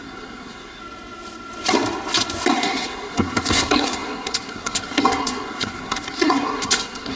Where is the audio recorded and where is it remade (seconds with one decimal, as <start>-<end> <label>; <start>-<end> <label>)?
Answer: 0.0-0.8 remade; 0.8-2.5 recorded; 2.5-7.2 remade